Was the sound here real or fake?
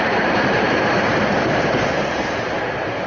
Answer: fake